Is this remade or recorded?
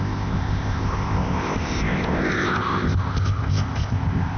remade